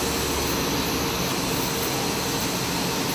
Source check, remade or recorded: recorded